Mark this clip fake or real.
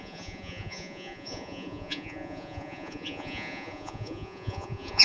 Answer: fake